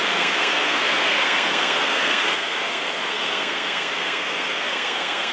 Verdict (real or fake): fake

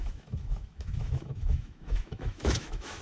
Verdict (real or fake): fake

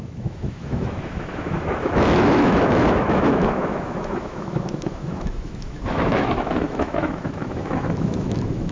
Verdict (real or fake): fake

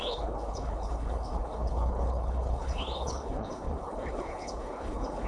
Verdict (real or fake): fake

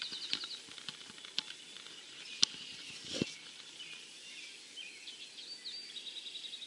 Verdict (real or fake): real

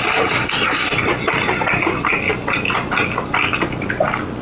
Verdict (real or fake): real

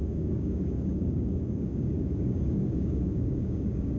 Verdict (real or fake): fake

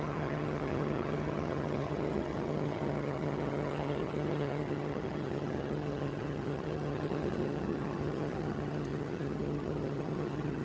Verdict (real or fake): fake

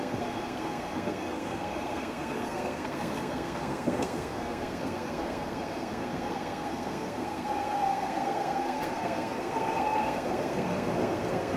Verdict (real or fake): fake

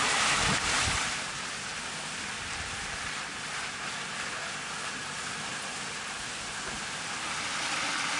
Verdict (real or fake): real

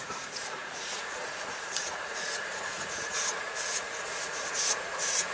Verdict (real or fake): fake